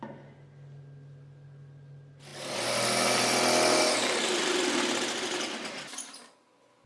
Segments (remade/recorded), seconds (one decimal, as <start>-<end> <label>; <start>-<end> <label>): 0.0-6.9 recorded